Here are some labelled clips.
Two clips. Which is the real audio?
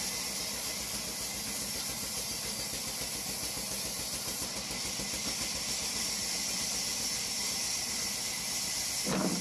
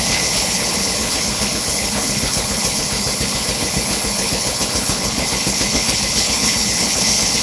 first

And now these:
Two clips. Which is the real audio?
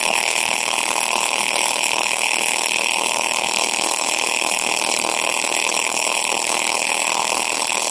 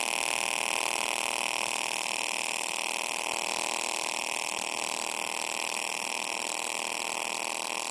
second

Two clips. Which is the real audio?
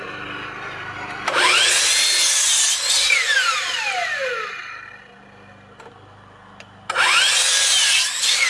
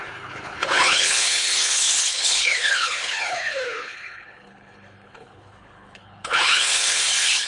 first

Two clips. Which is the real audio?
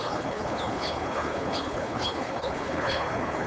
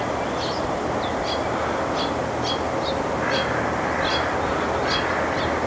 second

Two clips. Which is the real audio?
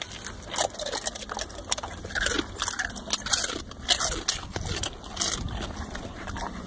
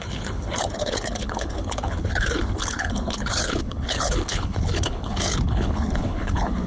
first